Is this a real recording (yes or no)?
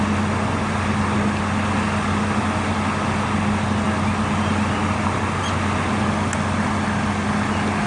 yes